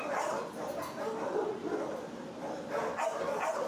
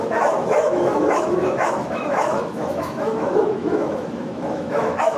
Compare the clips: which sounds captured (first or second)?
first